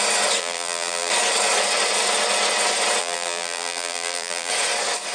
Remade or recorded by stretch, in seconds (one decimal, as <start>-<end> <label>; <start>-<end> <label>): 0.0-0.4 recorded; 0.4-1.1 remade; 1.1-3.0 recorded; 3.0-4.5 remade; 4.5-5.1 recorded